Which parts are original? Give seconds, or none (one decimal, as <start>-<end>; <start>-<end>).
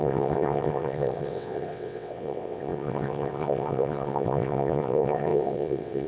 none